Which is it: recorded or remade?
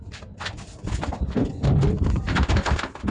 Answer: remade